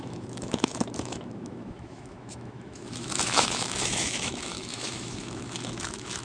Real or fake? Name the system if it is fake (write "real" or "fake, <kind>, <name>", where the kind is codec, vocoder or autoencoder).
fake, autoencoder, DAC-VAE